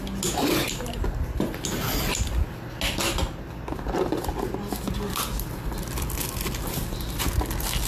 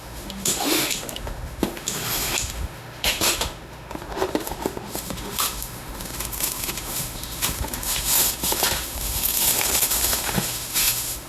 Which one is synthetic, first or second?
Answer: second